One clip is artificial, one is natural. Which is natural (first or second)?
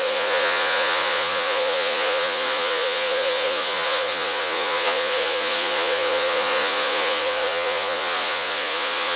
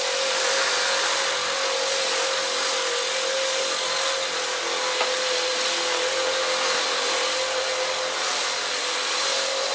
second